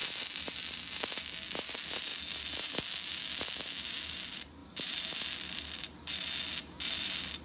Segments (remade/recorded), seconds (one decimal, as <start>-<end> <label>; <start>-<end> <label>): 0.0-1.2 remade; 1.2-2.1 recorded; 2.1-3.1 remade; 3.1-7.4 recorded